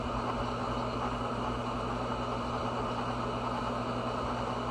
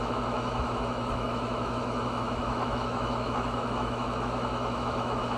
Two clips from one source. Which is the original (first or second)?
first